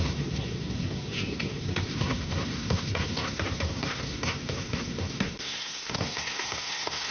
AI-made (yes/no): yes